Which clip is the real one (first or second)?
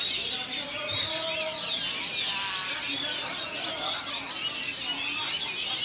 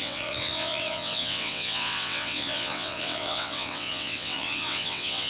first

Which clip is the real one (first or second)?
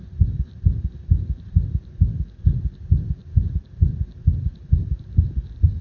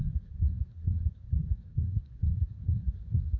first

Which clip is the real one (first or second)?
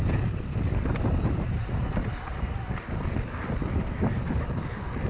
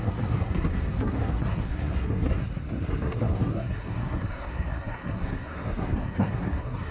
first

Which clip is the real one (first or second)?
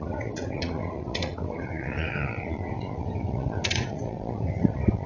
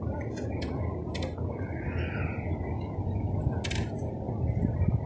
second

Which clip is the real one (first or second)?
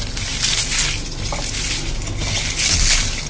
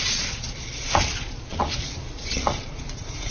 first